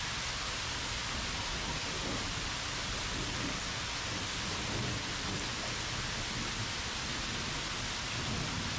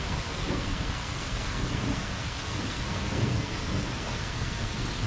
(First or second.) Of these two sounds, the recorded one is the first